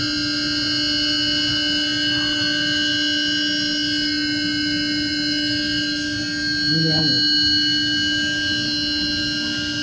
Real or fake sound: real